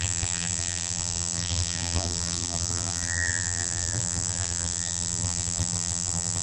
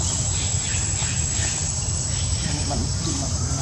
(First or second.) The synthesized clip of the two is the first